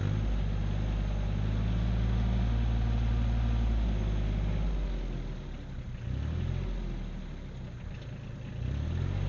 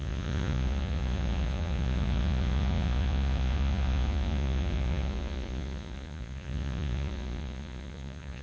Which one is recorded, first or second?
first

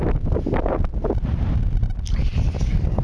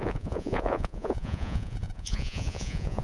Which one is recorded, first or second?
first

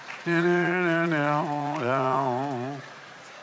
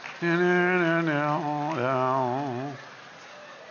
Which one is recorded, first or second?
second